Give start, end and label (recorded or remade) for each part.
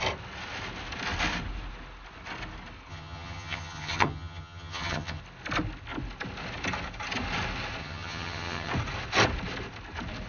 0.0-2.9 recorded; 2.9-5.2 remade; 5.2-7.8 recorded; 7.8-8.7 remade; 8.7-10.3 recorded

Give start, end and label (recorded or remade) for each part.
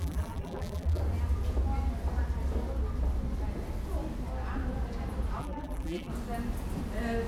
0.0-1.0 remade; 1.0-5.4 recorded; 5.4-6.1 remade; 6.1-7.3 recorded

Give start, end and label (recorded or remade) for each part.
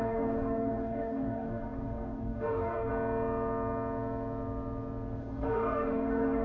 0.0-2.9 remade; 2.9-5.2 recorded; 5.2-6.4 remade